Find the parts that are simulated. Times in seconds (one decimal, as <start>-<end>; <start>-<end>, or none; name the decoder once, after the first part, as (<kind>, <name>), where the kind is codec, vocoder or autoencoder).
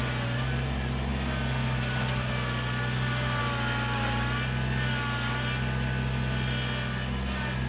none